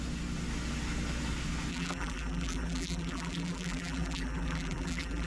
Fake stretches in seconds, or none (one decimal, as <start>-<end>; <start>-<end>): 1.7-5.3